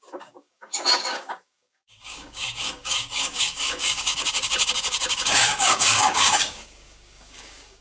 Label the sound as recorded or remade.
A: remade